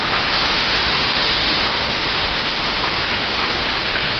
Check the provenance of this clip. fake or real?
fake